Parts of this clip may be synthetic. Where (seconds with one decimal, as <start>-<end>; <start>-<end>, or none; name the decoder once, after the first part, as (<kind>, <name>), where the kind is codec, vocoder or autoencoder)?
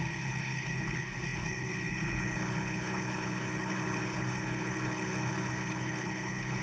0.0-6.6 (codec, HILCodec)